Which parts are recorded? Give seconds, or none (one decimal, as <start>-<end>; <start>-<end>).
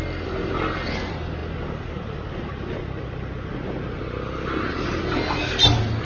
0.0-6.0